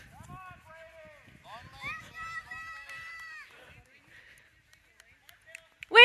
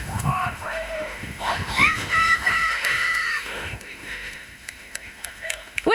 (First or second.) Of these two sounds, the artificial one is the second